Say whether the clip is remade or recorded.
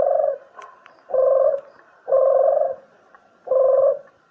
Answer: remade